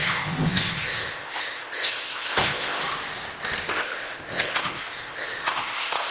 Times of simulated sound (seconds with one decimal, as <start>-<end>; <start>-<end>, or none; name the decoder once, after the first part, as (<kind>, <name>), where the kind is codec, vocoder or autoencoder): 0.0-2.8 (codec, ZipCodec); 3.7-6.1